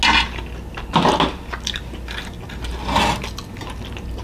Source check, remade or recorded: recorded